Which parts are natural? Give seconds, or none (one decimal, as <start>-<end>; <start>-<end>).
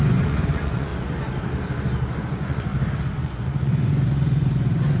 0.9-2.2; 2.7-3.2